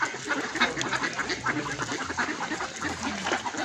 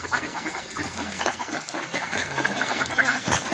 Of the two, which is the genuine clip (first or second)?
first